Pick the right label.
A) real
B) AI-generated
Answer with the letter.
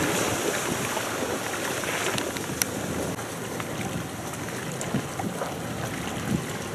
A